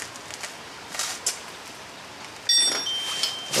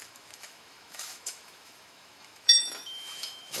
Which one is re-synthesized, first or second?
second